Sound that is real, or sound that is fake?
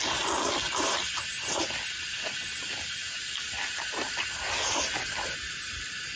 real